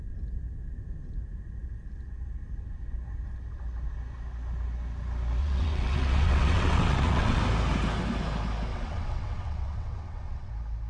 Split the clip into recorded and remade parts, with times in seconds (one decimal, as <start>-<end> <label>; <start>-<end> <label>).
0.0-5.4 recorded; 5.4-7.4 remade; 7.4-8.7 recorded; 8.7-10.5 remade; 10.5-10.9 recorded